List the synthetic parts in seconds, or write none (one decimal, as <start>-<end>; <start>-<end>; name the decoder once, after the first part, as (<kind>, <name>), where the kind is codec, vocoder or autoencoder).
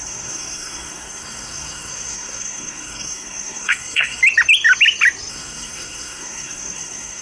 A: 0.0-4.2 (codec, SNAC); 5.3-7.2